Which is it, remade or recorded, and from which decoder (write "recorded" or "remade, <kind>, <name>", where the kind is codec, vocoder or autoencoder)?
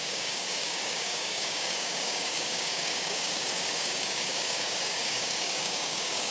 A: remade, codec, DAC